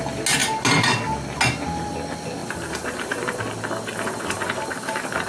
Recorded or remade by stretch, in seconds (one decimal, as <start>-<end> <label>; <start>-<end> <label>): 0.0-2.4 recorded; 2.4-3.4 remade; 3.4-3.9 recorded; 3.9-5.3 remade